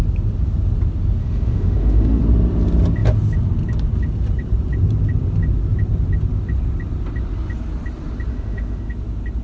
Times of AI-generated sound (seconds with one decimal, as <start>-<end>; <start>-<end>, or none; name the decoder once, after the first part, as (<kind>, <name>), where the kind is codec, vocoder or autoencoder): 1.2-2.2 (autoencoder, DAC-VAE); 8.3-8.9